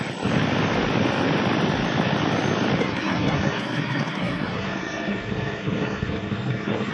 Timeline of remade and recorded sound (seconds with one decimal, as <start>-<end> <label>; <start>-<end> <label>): 0.0-2.8 recorded; 2.8-6.9 remade